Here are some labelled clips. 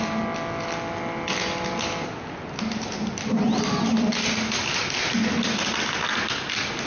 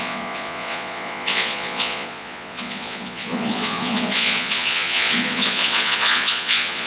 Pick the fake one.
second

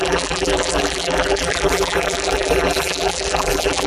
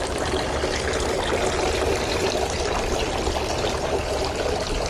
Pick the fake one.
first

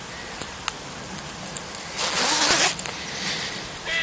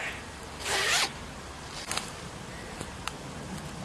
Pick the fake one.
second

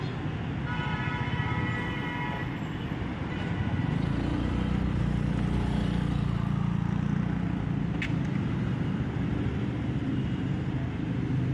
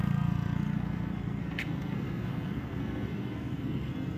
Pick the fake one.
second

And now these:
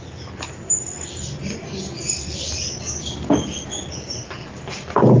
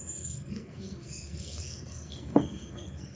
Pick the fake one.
second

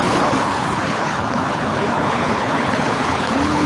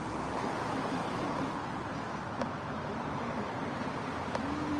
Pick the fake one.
first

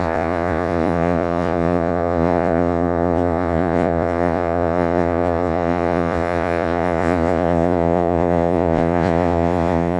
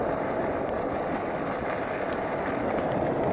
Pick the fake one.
first